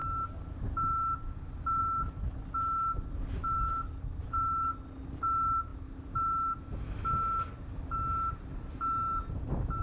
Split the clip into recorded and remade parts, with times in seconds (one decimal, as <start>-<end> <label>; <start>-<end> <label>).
0.0-9.8 recorded